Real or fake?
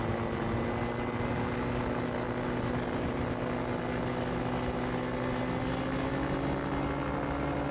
real